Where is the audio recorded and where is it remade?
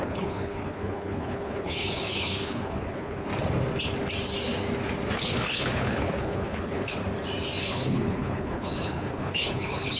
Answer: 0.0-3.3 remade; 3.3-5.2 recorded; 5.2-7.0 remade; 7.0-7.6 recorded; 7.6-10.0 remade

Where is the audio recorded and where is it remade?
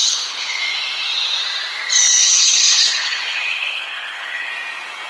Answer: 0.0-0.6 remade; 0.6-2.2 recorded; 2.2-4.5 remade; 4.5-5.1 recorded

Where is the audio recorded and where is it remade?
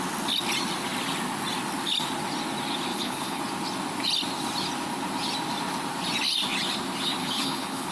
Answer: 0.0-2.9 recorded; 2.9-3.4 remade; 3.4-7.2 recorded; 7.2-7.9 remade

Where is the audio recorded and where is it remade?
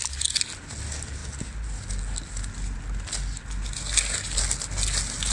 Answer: 0.0-5.3 recorded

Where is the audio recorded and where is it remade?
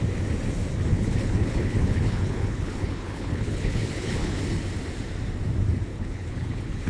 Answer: 0.0-0.9 recorded; 0.9-4.4 remade; 4.4-5.9 recorded; 5.9-6.9 remade